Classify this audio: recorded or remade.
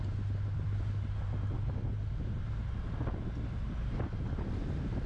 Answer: recorded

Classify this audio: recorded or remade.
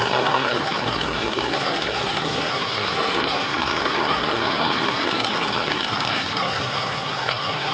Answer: remade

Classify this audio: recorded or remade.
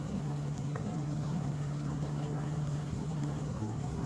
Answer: remade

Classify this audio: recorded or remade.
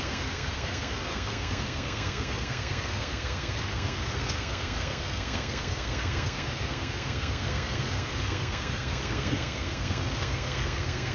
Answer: remade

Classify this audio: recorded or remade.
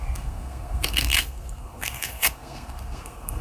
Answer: remade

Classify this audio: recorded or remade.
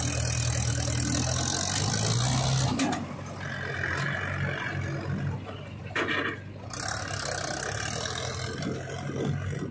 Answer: recorded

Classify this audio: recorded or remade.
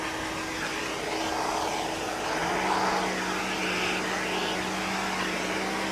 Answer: recorded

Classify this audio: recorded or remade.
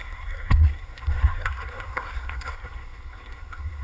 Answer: remade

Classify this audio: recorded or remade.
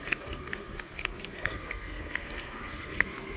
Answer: remade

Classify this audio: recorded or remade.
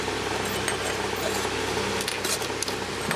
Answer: recorded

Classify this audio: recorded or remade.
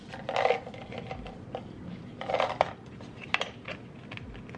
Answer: recorded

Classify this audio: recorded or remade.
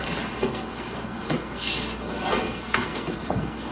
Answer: remade